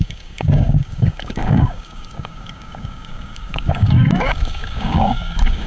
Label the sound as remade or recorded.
remade